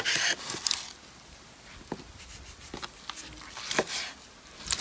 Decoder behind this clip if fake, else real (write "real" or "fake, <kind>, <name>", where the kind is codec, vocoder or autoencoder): real